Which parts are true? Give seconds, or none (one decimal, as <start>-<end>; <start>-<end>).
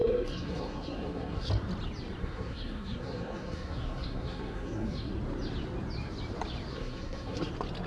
1.5-2.2; 5.1-6.7; 7.5-7.9